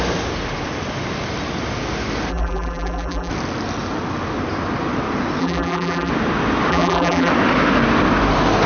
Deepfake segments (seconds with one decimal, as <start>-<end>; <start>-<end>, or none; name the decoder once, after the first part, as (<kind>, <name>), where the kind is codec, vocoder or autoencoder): 2.3-3.3 (vocoder, BigVGAN v2); 5.4-6.1; 6.7-7.3